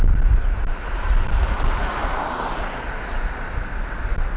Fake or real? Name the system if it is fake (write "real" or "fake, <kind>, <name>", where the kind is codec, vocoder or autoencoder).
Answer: real